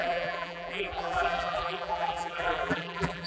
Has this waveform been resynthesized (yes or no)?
yes